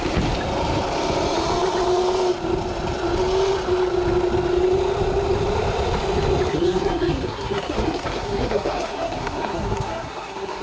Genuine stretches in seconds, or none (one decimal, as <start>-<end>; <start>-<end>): 0.0-6.5